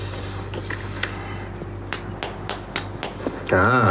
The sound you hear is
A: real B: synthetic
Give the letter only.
A